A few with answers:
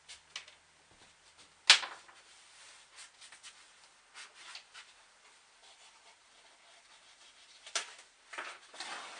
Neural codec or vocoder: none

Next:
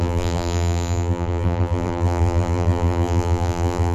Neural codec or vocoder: vocoder, BigVGAN v2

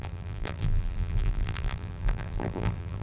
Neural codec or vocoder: vocoder, BigVGAN v2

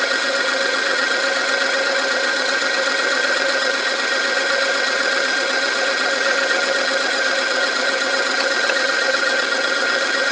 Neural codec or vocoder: vocoder, HiFi-GAN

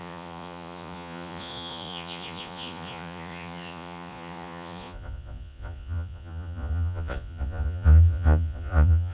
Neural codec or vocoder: vocoder, Vocos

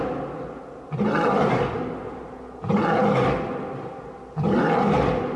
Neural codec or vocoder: none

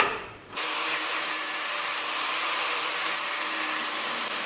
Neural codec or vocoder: vocoder, BigVGAN v2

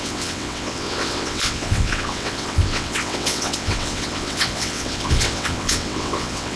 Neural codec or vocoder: vocoder, WaveNeXt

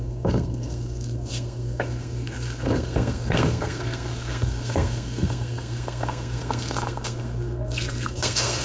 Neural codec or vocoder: codec, SNAC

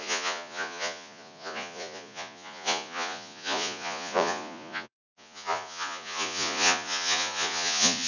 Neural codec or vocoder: vocoder, Vocos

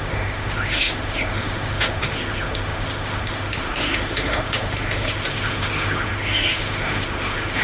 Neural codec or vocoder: autoencoder, DAC-VAE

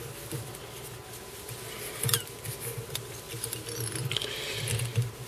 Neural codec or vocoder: none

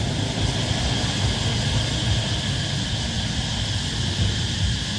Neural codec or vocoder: none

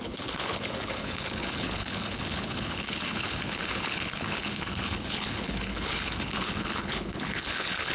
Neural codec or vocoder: codec, HILCodec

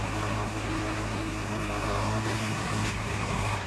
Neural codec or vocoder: codec, SNAC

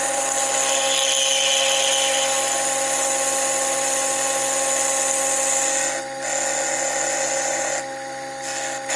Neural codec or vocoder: none